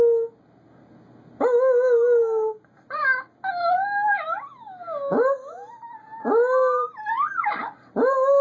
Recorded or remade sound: recorded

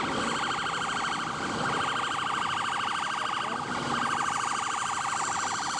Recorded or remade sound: recorded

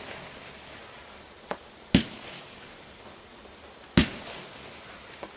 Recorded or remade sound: recorded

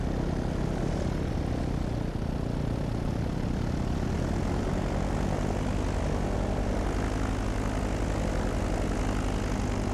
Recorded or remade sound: recorded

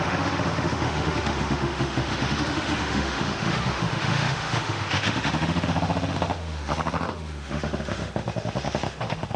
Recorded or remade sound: remade